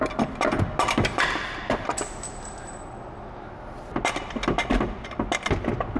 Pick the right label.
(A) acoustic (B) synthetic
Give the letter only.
A